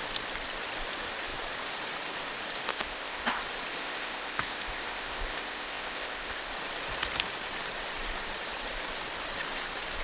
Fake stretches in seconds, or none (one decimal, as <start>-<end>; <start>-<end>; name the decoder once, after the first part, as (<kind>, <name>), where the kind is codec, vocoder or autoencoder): 2.7-3.4 (codec, ZipCodec); 3.8-6.5